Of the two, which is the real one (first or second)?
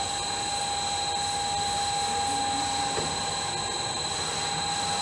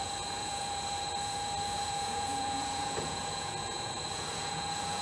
first